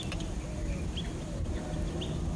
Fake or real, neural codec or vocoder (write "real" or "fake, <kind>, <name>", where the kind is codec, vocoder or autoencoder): real